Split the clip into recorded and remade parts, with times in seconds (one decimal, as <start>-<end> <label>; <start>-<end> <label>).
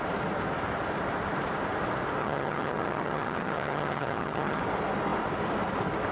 0.0-2.2 recorded; 2.2-4.6 remade; 4.6-6.1 recorded